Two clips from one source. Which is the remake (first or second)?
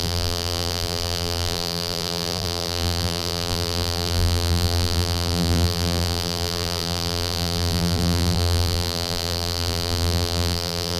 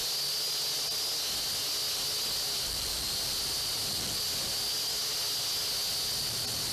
first